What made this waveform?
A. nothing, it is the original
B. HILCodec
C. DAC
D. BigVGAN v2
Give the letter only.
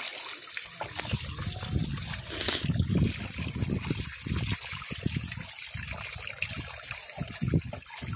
A